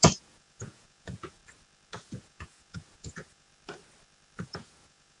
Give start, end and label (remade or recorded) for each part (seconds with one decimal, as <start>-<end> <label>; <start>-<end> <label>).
0.0-1.4 remade; 1.4-2.0 recorded; 2.0-3.5 remade; 3.5-4.4 recorded; 4.4-5.2 remade